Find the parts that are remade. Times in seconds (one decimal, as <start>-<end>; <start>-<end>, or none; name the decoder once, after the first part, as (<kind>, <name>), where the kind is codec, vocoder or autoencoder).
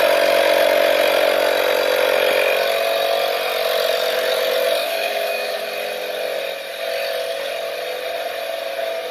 4.8-5.6 (autoencoder, DAC-VAE)